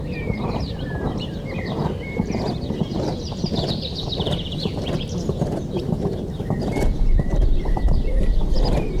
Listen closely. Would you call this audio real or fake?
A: fake